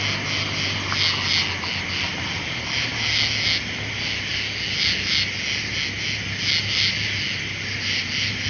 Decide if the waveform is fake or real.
real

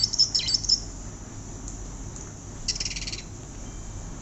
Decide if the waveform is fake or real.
real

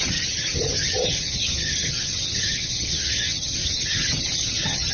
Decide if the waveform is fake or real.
fake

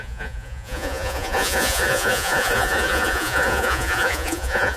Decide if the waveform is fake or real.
fake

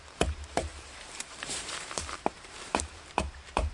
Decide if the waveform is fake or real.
fake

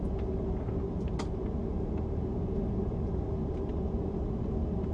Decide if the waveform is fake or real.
real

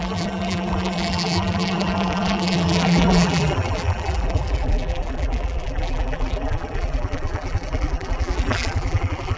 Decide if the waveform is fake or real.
fake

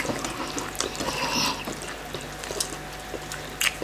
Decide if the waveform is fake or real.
real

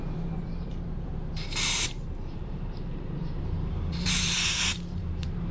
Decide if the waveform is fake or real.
fake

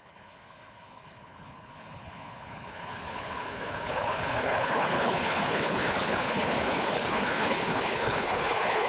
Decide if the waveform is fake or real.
fake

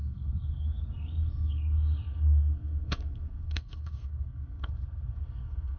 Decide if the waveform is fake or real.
fake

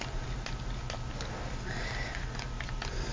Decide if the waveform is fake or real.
real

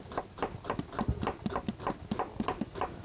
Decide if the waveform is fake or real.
real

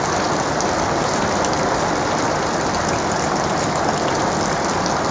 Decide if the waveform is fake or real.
real